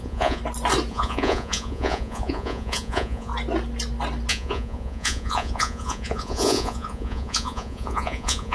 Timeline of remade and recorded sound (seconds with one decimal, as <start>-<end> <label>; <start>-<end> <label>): 0.0-0.4 remade; 0.4-0.9 recorded; 0.9-3.3 remade; 3.3-4.3 recorded; 4.3-8.5 remade